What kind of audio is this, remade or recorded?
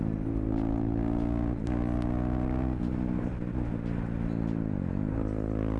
recorded